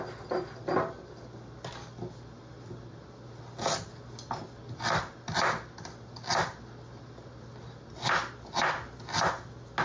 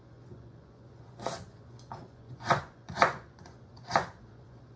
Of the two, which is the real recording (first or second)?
first